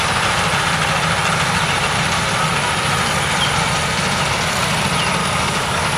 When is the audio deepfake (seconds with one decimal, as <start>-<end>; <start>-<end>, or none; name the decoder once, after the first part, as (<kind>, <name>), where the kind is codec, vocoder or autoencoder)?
5.2-6.0 (codec, DAC)